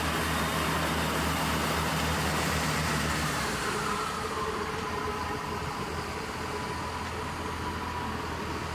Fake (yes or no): no